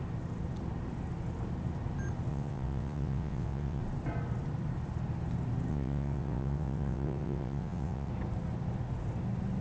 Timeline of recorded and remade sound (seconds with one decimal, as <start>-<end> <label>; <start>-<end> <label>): 0.0-2.3 recorded; 2.3-3.8 remade; 3.8-5.7 recorded; 5.7-8.1 remade; 8.1-9.6 recorded